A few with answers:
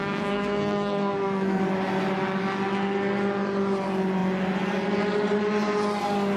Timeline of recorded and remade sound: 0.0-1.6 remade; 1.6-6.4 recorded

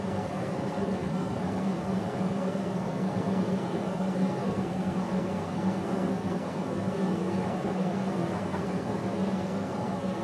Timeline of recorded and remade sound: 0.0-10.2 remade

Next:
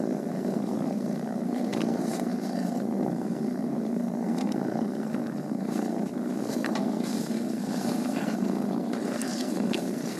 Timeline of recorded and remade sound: 0.0-10.2 remade

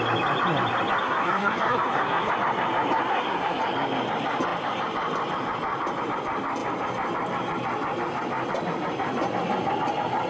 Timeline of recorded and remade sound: 0.0-1.0 recorded; 1.0-2.3 remade; 2.3-3.1 recorded; 3.1-3.6 remade; 3.6-10.3 recorded